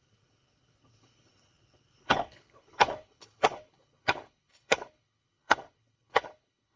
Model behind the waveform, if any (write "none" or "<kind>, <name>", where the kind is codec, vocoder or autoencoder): codec, HILCodec